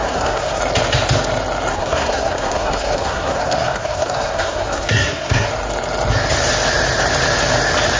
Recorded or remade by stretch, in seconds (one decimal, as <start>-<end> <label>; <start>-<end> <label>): 0.0-0.6 remade; 0.6-1.7 recorded; 1.7-5.5 remade; 5.5-8.0 recorded